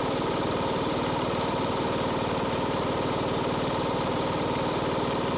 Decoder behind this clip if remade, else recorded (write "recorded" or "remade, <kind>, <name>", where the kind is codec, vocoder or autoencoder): remade, vocoder, BigVGAN v2